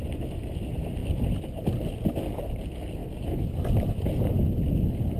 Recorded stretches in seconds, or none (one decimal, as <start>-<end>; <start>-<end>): 0.0-5.2